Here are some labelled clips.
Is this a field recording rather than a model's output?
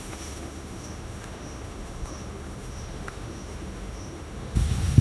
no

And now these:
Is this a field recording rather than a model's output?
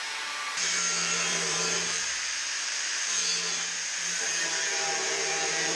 no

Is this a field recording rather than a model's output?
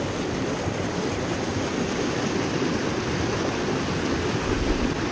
yes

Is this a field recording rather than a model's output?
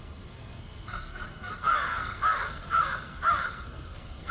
no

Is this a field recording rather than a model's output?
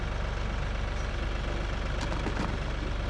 yes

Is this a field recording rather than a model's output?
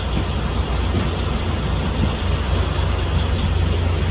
yes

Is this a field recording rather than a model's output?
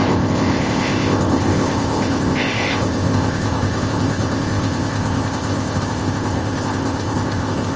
no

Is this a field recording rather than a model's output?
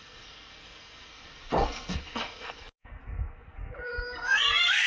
no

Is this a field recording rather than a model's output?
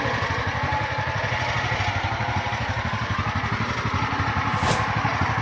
yes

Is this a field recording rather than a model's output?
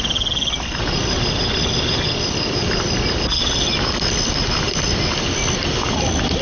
yes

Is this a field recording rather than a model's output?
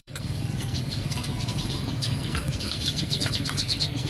no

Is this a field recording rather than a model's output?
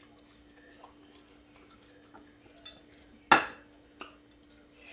yes